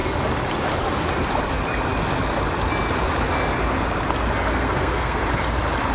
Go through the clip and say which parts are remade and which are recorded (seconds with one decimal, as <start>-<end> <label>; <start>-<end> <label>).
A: 0.0-4.5 recorded; 4.5-5.2 remade; 5.2-5.9 recorded

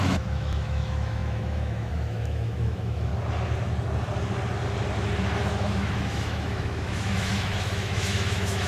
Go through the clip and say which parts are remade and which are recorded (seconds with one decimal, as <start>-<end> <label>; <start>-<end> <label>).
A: 0.0-3.1 remade; 3.1-5.4 recorded; 5.4-8.7 remade

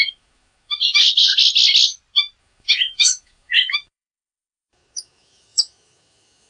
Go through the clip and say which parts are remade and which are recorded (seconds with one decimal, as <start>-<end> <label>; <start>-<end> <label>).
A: 0.0-1.3 remade; 1.3-2.4 recorded; 2.4-6.5 remade

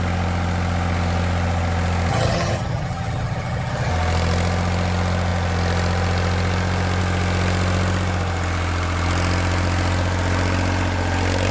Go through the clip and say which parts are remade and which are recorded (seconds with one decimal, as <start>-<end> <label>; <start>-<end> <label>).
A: 0.0-2.1 recorded; 2.1-3.9 remade; 3.9-11.5 recorded

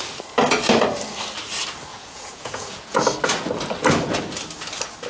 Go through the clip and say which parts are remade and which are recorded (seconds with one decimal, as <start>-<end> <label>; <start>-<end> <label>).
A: 0.0-1.9 recorded; 1.9-3.0 remade; 3.0-5.1 recorded

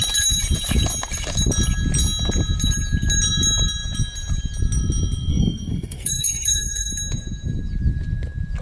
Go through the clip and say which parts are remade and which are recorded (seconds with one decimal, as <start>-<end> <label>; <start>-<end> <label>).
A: 0.0-5.3 recorded; 5.3-6.9 remade; 6.9-8.6 recorded

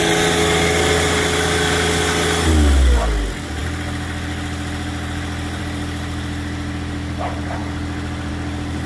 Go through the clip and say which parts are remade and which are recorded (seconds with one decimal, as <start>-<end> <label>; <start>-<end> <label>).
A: 0.0-8.9 recorded